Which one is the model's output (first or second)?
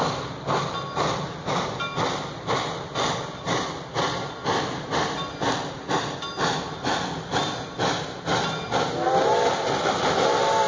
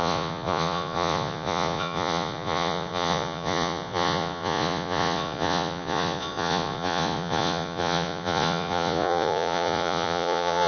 second